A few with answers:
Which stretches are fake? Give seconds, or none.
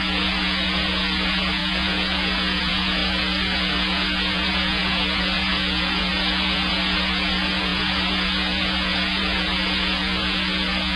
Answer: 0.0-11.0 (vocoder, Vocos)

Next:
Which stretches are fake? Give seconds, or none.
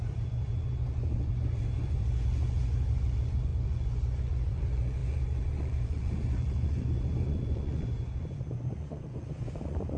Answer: 0.0-10.0 (vocoder, Vocos)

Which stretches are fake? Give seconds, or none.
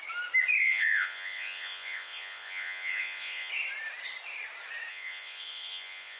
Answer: 0.6-3.5 (vocoder, Vocos); 4.9-6.2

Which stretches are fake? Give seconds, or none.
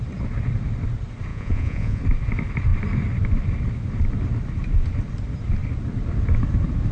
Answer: 1.3-2.0 (vocoder, Vocos)